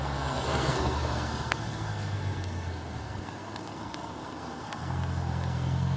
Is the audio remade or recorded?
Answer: remade